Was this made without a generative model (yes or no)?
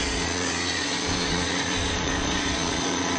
no